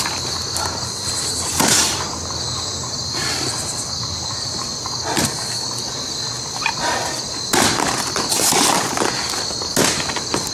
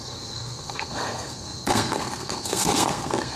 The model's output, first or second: second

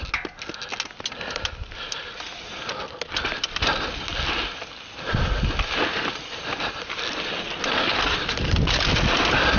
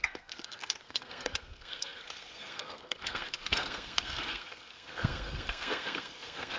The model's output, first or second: second